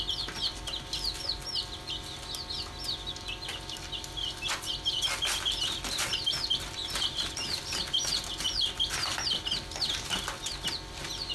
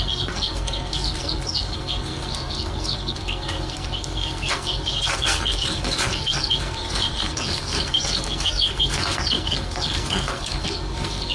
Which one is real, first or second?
first